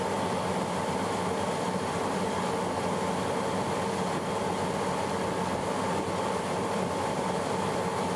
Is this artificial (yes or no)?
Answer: no